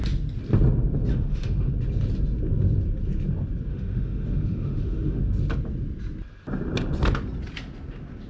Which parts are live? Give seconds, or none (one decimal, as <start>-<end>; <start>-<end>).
0.0-1.1; 1.7-3.7; 5.2-8.3